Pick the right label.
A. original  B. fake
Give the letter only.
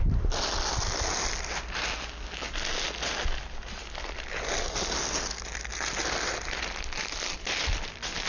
A